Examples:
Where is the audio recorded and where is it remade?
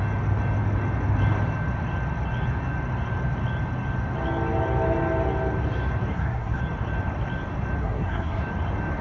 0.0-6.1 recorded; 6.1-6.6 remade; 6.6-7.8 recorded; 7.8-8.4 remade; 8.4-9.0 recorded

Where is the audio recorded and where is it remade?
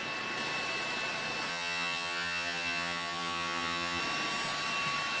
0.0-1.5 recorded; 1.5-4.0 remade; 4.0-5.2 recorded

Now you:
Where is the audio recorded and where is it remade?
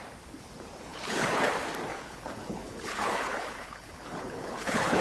0.0-0.9 recorded; 0.9-1.5 remade; 1.5-1.9 recorded; 1.9-5.0 remade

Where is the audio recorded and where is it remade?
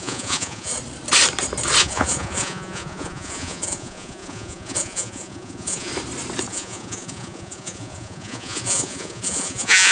0.0-0.7 remade; 0.7-1.8 recorded; 1.8-5.9 remade; 5.9-6.5 recorded; 6.5-9.9 remade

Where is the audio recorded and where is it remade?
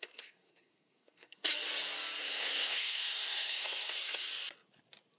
0.0-1.5 remade; 1.5-2.2 recorded; 2.2-4.3 remade; 4.3-5.2 recorded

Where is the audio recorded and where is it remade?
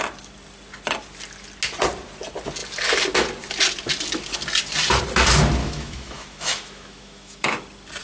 0.0-5.6 recorded; 5.6-7.6 remade; 7.6-8.0 recorded